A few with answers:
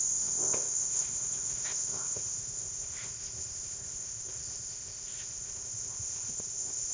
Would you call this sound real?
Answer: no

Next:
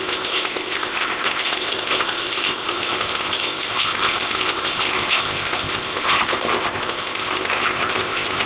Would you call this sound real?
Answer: no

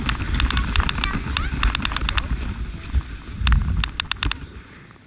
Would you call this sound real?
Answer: yes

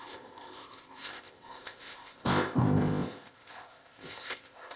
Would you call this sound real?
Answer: no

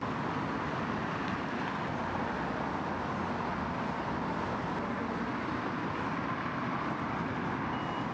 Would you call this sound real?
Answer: yes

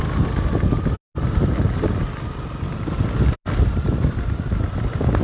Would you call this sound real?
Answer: yes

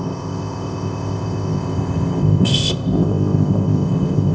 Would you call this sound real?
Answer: no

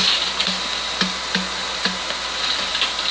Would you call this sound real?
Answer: yes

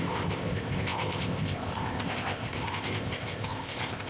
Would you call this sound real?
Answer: no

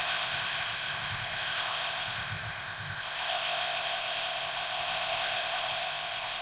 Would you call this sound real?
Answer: no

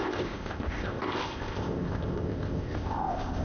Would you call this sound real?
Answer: no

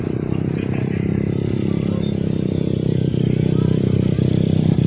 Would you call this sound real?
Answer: yes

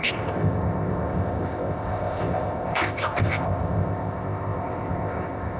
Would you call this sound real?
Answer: no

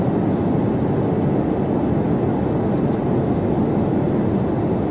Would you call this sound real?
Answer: yes